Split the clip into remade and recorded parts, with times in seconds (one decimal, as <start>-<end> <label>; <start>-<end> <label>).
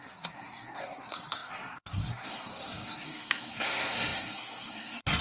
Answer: 0.0-5.2 remade